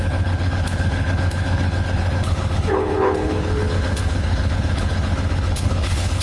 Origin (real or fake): fake